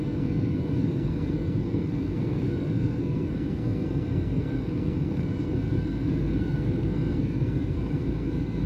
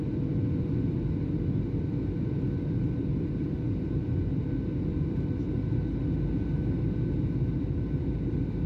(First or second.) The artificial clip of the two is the first